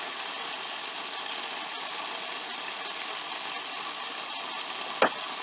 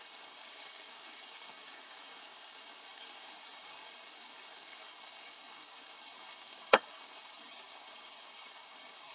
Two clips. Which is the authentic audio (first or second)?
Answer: first